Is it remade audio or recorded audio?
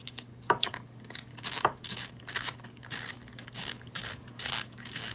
remade